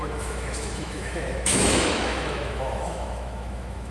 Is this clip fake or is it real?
fake